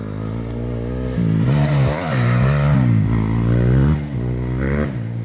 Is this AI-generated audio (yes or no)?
no